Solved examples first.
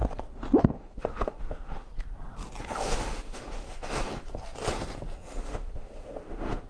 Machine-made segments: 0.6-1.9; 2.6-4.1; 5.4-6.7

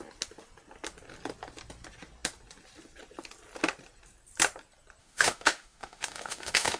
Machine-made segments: 5.0-6.8

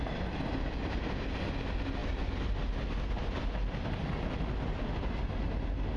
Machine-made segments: none

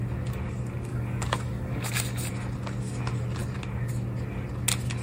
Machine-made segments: 0.9-2.3

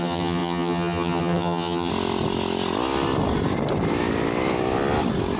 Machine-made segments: 0.0-1.9

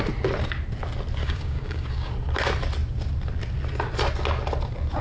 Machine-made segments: 1.2-2.1